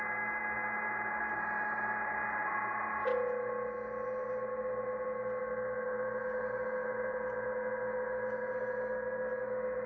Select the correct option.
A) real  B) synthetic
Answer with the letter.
A